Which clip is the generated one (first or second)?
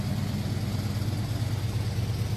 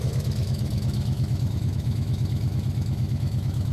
second